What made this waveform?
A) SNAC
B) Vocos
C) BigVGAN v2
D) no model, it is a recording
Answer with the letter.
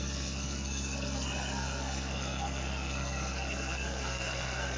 A